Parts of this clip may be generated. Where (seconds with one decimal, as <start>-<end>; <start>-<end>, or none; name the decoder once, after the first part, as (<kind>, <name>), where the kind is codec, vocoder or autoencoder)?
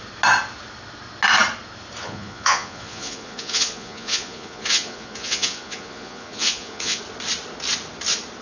2.0-7.0 (vocoder, Vocos)